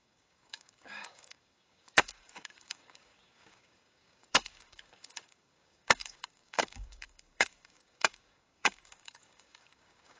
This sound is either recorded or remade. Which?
remade